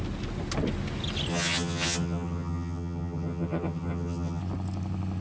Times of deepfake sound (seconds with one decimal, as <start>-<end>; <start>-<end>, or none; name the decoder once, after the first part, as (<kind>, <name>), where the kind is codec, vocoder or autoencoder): 1.3-4.4 (vocoder, HiFi-GAN)